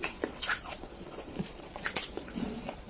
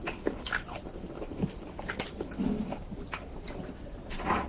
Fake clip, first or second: first